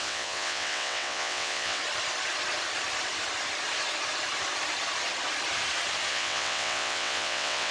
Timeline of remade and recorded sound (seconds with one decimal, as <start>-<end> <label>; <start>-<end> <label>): 0.0-1.8 remade; 1.8-6.1 recorded; 6.1-7.7 remade